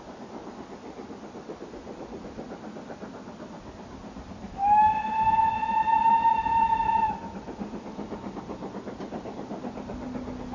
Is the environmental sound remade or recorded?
recorded